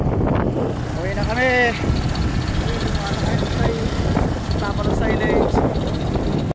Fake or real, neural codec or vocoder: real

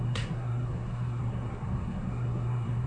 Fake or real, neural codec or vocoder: fake, codec, SNAC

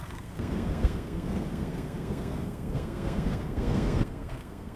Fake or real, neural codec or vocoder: fake, codec, SNAC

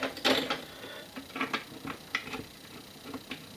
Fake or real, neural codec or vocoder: real